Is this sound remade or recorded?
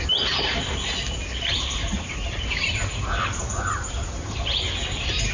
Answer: recorded